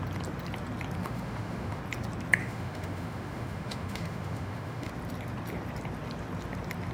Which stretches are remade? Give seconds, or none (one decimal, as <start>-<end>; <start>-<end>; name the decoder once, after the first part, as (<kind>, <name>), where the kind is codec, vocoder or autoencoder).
1.0-1.8 (autoencoder, DAC-VAE); 2.4-4.9